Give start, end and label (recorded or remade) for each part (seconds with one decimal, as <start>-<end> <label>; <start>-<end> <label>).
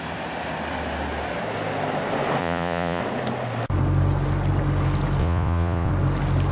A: 0.0-2.4 recorded; 2.4-3.0 remade; 3.0-5.2 recorded; 5.2-5.9 remade; 5.9-6.5 recorded